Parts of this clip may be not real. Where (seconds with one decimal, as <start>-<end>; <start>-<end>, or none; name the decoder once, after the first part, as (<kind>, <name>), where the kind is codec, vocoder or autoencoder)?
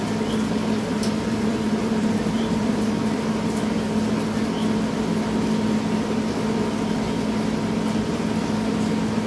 0.9-3.3 (vocoder, BigVGAN v2)